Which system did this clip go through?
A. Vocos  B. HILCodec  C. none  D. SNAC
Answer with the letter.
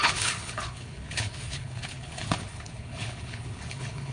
B